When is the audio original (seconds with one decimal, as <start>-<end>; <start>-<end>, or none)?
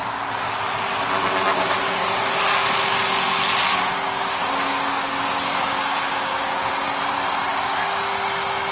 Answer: 0.0-1.5; 2.4-3.7; 6.7-8.7